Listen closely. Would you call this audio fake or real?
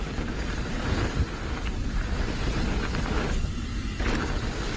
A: real